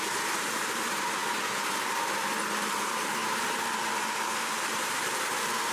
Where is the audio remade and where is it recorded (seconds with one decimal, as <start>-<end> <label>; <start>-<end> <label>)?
0.0-1.2 remade; 1.2-1.8 recorded; 1.8-2.2 remade; 2.2-2.8 recorded; 2.8-5.7 remade